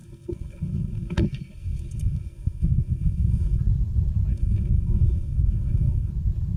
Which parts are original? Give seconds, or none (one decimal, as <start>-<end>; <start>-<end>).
3.6-4.3; 6.1-6.6